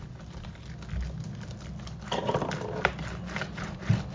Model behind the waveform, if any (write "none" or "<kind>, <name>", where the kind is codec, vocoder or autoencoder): none